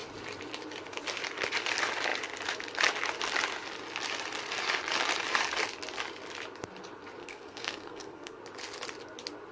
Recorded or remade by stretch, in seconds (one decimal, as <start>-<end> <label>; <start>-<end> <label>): 0.0-7.2 recorded; 7.2-8.4 remade; 8.4-9.5 recorded